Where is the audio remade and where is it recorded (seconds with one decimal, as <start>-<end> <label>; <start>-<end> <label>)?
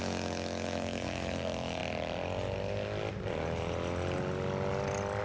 0.0-1.8 remade; 1.8-5.2 recorded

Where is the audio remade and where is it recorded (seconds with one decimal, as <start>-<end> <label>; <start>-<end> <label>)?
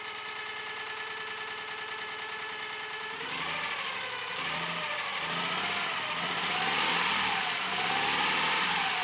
0.0-9.0 recorded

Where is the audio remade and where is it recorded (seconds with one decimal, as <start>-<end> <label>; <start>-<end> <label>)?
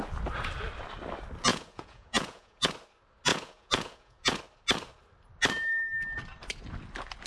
0.0-1.5 recorded; 1.5-2.7 remade; 2.7-3.3 recorded; 3.3-4.4 remade; 4.4-7.3 recorded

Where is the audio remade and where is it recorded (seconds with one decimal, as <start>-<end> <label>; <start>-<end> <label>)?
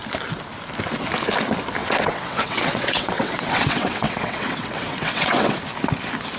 0.0-1.8 recorded; 1.8-5.6 remade; 5.6-6.4 recorded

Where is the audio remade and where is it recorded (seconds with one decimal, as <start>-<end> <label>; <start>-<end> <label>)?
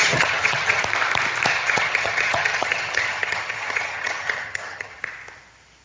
0.0-0.8 remade; 0.8-1.5 recorded; 1.5-5.0 remade; 5.0-5.8 recorded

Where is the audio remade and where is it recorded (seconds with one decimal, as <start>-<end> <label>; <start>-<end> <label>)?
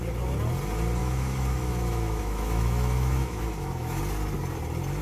0.0-1.0 recorded; 1.0-4.0 remade; 4.0-5.0 recorded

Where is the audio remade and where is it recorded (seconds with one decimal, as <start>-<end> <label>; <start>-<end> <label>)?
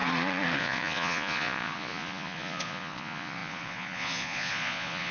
0.0-0.6 recorded; 0.6-5.1 remade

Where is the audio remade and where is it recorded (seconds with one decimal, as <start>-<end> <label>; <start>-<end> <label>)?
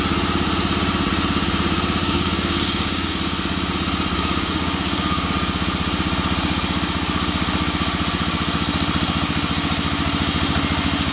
0.0-2.0 recorded; 2.0-3.1 remade; 3.1-4.1 recorded; 4.1-5.3 remade; 5.3-11.1 recorded